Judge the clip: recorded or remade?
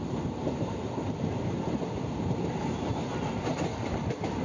recorded